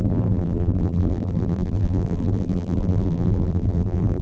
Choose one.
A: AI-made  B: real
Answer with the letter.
A